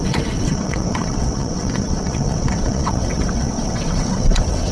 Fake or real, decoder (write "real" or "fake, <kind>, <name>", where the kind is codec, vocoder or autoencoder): fake, vocoder, WaveNeXt